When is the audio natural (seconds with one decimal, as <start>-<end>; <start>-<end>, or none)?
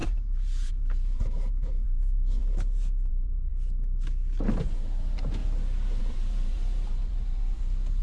2.4-3.1; 3.5-4.6; 5.4-6.0